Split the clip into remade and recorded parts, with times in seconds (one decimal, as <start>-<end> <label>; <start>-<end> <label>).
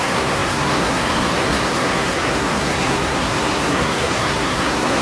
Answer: 0.0-5.0 remade